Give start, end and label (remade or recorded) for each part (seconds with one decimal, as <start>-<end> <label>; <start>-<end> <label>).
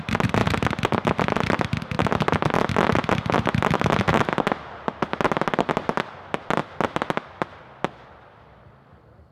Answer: 0.0-9.3 recorded